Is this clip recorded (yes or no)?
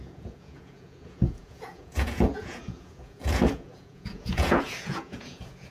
no